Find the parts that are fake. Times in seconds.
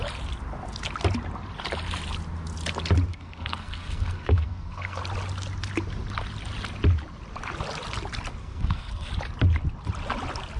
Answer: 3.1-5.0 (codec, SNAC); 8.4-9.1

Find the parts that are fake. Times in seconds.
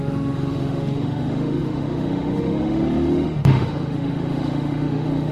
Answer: 0.0-5.3 (autoencoder, DAC-VAE)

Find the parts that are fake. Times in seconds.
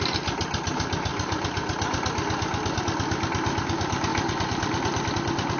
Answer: 4.1-5.1 (vocoder, BigVGAN v2)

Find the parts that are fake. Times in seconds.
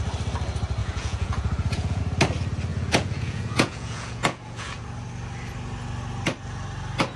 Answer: 0.8-2.0 (vocoder, Vocos); 2.7-4.8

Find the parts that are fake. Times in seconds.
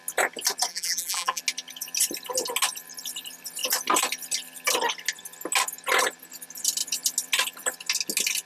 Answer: 0.7-1.4 (vocoder, BigVGAN v2)